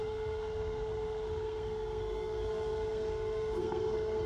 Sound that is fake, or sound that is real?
fake